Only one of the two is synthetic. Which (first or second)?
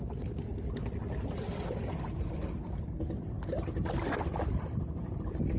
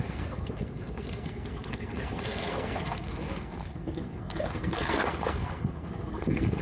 second